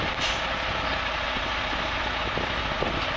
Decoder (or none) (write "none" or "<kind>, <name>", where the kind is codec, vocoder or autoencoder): none